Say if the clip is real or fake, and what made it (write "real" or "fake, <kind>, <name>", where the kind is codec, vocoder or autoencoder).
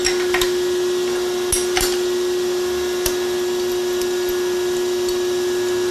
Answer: real